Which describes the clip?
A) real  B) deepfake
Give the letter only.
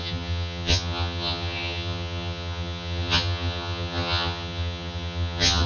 B